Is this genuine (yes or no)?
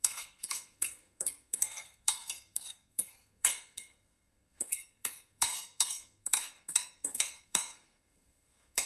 no